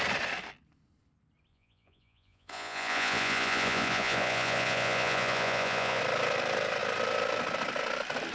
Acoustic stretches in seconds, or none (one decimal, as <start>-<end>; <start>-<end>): 0.0-1.5; 6.0-8.3